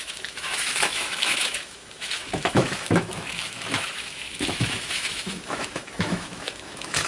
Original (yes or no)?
no